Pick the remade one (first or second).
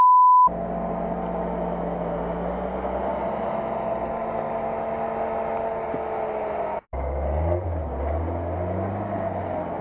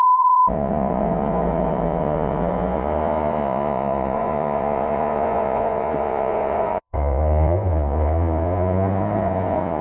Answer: second